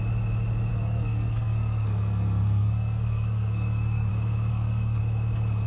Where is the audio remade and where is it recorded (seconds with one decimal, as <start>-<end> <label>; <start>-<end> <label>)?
0.0-0.7 recorded; 0.7-4.1 remade; 4.1-4.5 recorded; 4.5-5.0 remade; 5.0-5.7 recorded